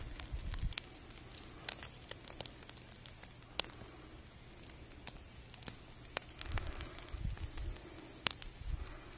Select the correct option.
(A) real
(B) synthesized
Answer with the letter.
A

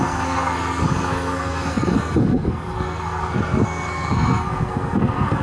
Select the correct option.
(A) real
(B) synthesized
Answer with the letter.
B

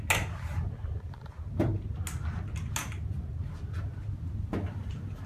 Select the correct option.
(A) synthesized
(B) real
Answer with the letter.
B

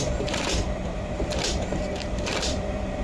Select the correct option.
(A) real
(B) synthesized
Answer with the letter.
B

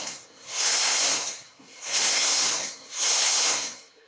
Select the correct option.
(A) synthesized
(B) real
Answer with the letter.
A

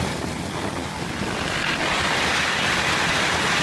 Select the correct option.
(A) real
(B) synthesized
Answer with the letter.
A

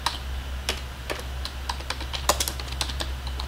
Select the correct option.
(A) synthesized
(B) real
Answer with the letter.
B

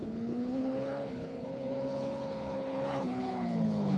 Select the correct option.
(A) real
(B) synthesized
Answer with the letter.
B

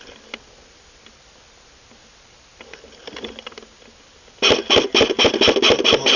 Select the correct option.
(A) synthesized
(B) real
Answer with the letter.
B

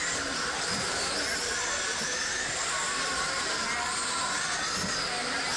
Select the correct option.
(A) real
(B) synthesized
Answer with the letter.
A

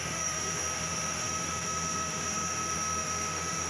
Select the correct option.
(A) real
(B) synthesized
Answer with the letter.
B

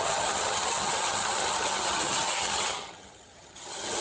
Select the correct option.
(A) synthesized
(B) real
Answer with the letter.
A